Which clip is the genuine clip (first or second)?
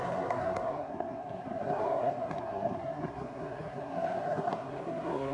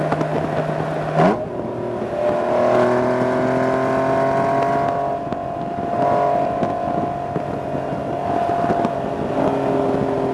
second